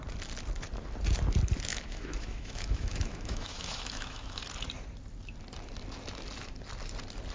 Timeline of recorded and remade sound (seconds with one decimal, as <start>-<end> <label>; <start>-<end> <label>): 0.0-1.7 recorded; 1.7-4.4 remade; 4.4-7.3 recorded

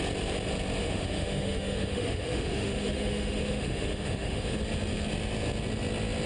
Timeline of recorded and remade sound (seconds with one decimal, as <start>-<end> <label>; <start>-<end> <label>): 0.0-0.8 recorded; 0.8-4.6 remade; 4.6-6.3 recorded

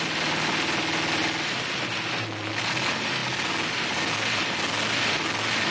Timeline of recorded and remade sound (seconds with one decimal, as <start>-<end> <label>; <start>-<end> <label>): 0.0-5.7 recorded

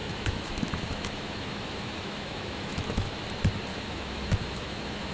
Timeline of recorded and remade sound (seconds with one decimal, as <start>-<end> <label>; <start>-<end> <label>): 0.0-3.1 remade; 3.1-3.7 recorded; 3.7-5.1 remade

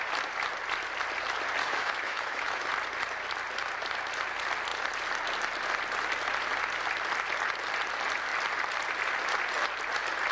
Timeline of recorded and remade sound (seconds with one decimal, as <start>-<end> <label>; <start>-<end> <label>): 0.0-1.6 recorded; 1.6-2.7 remade; 2.7-10.3 recorded